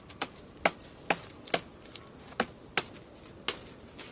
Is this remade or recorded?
recorded